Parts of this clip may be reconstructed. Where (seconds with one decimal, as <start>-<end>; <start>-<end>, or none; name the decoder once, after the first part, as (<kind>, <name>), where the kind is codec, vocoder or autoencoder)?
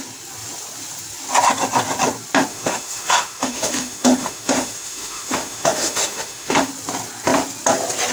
2.5-6.7 (autoencoder, DAC-VAE)